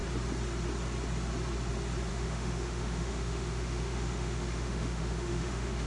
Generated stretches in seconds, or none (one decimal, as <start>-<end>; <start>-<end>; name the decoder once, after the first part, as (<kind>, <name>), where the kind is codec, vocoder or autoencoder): 2.1-5.9 (autoencoder, DAC-VAE)